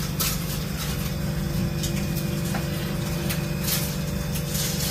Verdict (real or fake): real